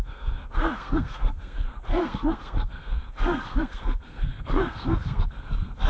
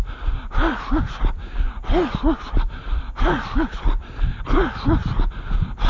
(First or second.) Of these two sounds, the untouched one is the second